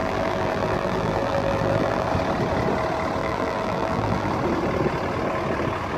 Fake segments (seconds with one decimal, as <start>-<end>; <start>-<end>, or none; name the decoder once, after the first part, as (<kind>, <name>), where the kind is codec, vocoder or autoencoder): 0.0-2.1 (vocoder, BigVGAN v2); 3.2-4.3